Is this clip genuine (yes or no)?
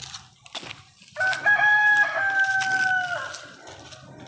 yes